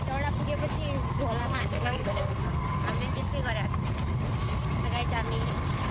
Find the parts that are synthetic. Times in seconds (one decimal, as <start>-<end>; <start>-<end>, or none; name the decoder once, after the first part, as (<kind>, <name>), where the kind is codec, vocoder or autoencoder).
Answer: 1.4-2.6 (codec, SNAC)